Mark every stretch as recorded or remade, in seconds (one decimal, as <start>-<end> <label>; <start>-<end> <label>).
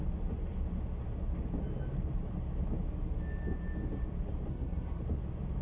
0.0-4.5 recorded; 4.5-5.0 remade; 5.0-5.6 recorded